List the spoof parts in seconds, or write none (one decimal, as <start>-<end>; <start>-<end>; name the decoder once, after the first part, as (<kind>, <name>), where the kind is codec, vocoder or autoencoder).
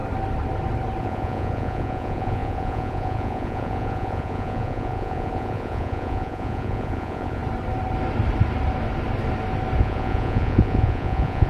1.0-7.4 (vocoder, Vocos); 9.8-11.5